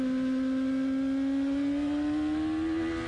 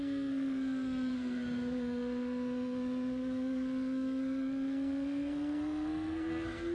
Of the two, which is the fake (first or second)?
second